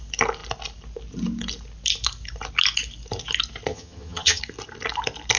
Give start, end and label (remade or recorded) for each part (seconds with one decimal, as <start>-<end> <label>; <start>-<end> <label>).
0.0-3.7 recorded; 3.7-4.4 remade; 4.4-5.4 recorded